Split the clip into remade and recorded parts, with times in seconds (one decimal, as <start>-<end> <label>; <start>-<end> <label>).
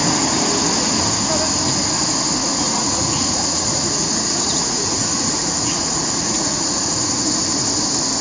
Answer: 0.0-2.4 recorded; 2.4-7.3 remade; 7.3-8.2 recorded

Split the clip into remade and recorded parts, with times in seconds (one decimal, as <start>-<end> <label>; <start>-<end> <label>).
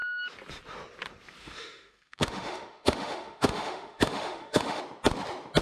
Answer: 0.0-1.4 recorded; 1.4-4.8 remade; 4.8-5.6 recorded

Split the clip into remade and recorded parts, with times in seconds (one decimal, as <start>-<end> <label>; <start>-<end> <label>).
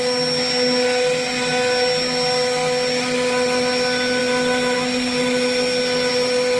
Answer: 0.0-6.6 recorded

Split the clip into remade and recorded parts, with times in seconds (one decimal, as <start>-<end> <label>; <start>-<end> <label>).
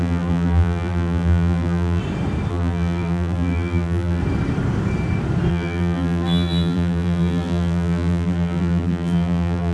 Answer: 0.0-2.0 remade; 2.0-2.5 recorded; 2.5-4.2 remade; 4.2-5.5 recorded; 5.5-9.7 remade